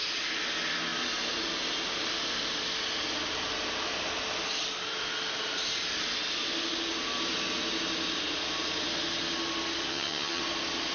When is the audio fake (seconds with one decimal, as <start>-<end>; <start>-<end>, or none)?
9.9-10.4